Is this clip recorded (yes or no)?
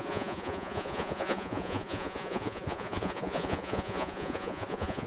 no